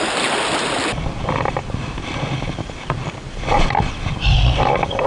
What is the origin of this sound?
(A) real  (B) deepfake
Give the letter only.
B